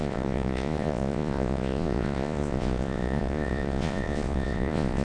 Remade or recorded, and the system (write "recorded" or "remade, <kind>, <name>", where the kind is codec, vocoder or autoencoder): remade, vocoder, Vocos